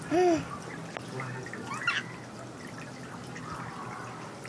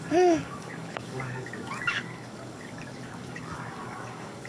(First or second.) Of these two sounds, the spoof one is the second